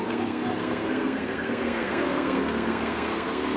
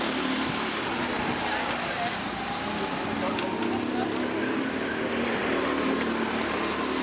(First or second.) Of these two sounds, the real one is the second